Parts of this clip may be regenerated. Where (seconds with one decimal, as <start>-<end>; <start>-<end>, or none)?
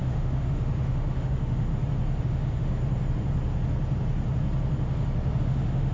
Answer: 0.0-1.7; 2.2-2.8; 5.4-5.9